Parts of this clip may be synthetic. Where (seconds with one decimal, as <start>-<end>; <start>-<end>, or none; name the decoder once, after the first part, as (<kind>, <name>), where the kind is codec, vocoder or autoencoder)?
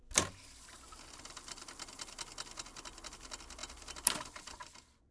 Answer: none